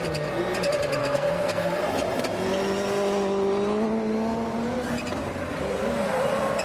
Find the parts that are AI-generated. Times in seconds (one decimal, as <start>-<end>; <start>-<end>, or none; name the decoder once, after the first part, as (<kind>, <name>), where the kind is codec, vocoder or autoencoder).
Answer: 1.0-1.8 (codec, SNAC)